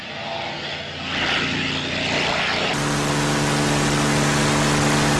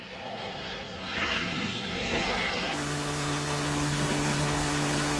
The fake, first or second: second